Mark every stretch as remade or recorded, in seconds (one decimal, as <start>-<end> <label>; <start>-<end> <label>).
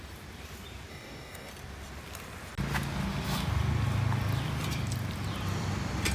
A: 0.0-0.9 recorded; 0.9-1.5 remade; 1.5-6.1 recorded